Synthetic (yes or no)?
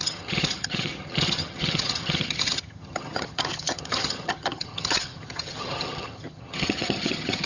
yes